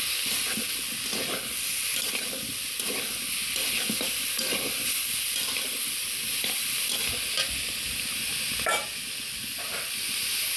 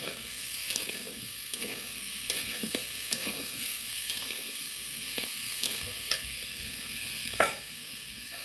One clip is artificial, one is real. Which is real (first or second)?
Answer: first